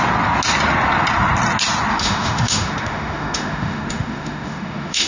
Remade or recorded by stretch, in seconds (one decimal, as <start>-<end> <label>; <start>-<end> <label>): 0.0-1.9 recorded; 1.9-5.1 remade